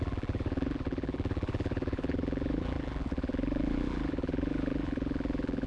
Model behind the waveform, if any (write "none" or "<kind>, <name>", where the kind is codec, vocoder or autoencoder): vocoder, BigVGAN v2